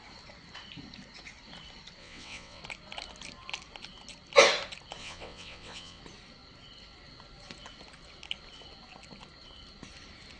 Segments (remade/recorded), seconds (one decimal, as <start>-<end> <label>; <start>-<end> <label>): 0.0-2.0 recorded; 2.0-2.6 remade; 2.6-5.0 recorded; 5.0-6.0 remade; 6.0-10.4 recorded